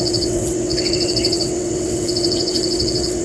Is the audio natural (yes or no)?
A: no